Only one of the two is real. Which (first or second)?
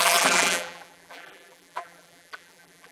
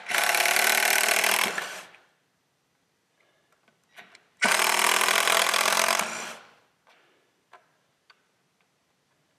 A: second